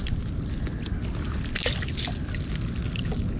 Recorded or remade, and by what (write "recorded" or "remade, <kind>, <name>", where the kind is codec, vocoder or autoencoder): recorded